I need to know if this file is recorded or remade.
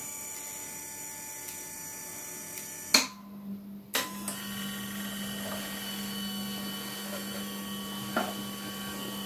recorded